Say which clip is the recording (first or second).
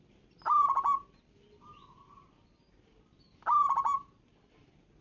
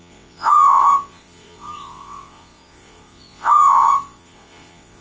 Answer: first